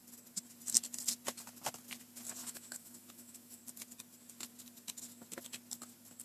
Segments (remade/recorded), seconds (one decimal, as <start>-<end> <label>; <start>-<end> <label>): 0.0-2.4 recorded; 2.4-3.6 remade; 3.6-6.2 recorded